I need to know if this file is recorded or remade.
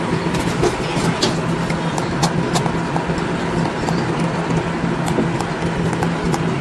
recorded